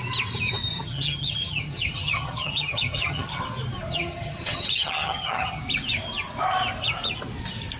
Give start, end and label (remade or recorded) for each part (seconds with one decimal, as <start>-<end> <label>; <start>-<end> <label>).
0.0-0.7 recorded; 0.7-3.4 remade; 3.4-3.9 recorded; 3.9-5.6 remade; 5.6-7.8 recorded

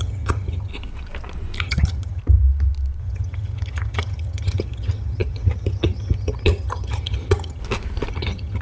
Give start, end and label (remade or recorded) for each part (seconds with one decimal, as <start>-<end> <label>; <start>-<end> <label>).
0.0-0.7 remade; 0.7-1.6 recorded; 1.6-2.2 remade; 2.2-3.0 recorded; 3.0-7.6 remade; 7.6-8.1 recorded; 8.1-8.6 remade

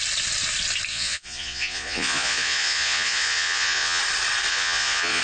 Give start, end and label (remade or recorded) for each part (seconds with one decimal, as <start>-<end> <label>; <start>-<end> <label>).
0.0-0.9 recorded; 0.9-4.0 remade; 4.0-4.5 recorded; 4.5-5.2 remade

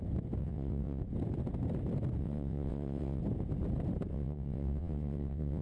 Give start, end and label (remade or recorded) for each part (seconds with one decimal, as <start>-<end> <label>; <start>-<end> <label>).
0.0-0.4 recorded; 0.4-1.0 remade; 1.0-2.2 recorded; 2.2-3.2 remade; 3.2-4.1 recorded; 4.1-5.6 remade

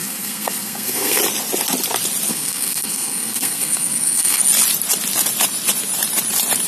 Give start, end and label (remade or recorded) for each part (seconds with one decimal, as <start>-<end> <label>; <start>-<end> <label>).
0.0-1.2 remade; 1.2-2.3 recorded; 2.3-4.4 remade; 4.4-6.7 recorded

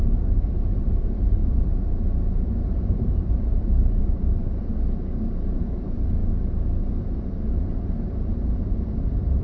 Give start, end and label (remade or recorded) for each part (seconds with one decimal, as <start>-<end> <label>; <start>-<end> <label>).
0.0-6.2 remade; 6.2-6.9 recorded; 6.9-9.4 remade

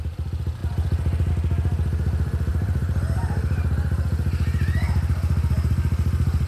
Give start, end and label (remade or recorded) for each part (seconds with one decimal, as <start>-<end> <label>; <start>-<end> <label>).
0.0-2.5 recorded; 2.5-5.7 remade; 5.7-6.5 recorded